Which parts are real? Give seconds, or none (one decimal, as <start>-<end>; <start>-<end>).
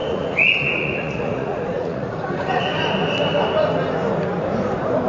2.7-5.1